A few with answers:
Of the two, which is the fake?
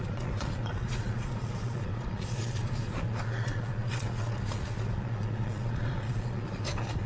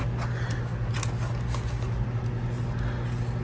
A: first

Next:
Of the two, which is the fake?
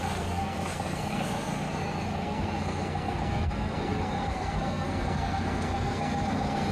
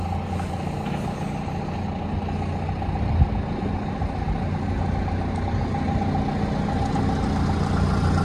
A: first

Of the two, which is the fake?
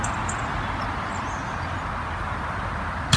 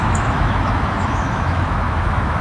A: second